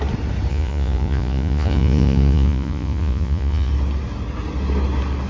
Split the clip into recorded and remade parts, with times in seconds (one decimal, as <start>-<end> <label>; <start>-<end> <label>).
0.0-0.5 recorded; 0.5-3.7 remade; 3.7-5.3 recorded